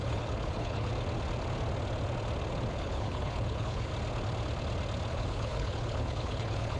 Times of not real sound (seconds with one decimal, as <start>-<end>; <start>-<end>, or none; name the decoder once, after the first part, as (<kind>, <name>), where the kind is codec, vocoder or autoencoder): 0.0-0.9 (codec, HILCodec); 2.7-3.9; 5.1-6.8